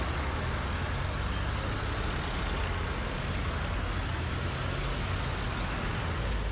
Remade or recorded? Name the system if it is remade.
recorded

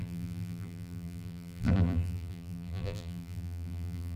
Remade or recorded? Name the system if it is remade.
remade, vocoder, BigVGAN v2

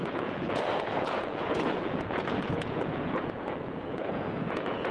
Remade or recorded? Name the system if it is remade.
remade, vocoder, Vocos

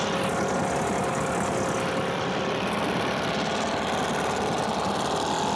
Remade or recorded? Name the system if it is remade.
recorded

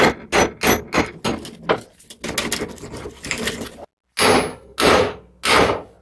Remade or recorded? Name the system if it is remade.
recorded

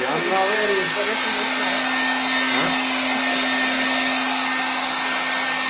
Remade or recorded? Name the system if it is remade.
recorded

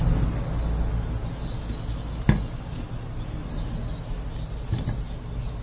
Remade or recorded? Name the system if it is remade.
recorded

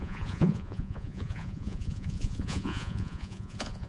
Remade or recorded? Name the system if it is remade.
remade, vocoder, Vocos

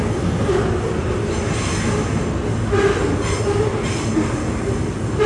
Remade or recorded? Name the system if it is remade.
recorded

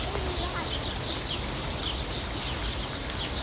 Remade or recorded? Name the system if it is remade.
recorded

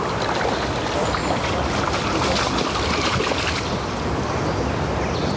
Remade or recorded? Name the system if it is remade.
recorded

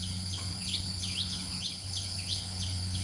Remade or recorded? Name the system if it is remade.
remade, codec, HILCodec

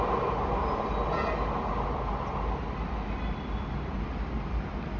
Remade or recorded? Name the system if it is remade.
recorded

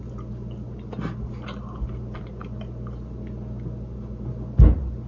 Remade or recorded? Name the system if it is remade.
recorded